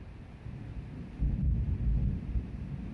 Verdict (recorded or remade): recorded